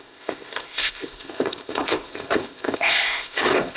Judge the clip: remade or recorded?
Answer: remade